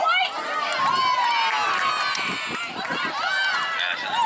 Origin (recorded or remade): recorded